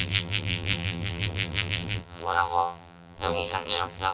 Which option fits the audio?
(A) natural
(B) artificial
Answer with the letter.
B